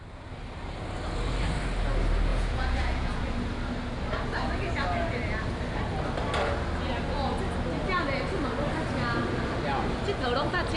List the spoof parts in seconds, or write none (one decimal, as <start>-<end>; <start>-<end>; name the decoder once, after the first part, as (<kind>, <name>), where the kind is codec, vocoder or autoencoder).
2.3-3.3 (vocoder, Vocos)

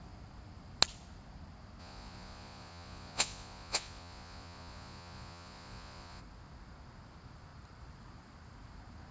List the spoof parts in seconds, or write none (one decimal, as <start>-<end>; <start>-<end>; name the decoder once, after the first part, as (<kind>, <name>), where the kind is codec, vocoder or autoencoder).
1.8-6.2 (vocoder, Vocos)

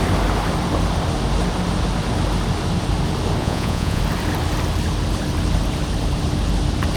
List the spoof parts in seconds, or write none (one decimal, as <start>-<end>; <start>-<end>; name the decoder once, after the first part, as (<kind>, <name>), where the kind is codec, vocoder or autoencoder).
3.4-4.0 (vocoder, Vocos)

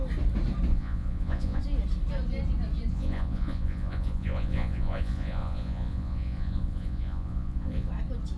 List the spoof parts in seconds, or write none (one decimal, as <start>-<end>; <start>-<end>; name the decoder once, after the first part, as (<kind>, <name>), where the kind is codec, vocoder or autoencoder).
0.7-1.6 (vocoder, Vocos); 2.9-7.9

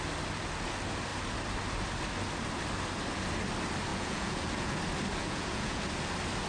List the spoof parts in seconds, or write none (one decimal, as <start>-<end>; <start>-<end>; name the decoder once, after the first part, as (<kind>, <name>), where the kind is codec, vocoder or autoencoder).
3.9-4.8 (vocoder, Vocos); 5.2-5.8